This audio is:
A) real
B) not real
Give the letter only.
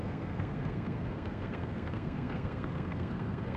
B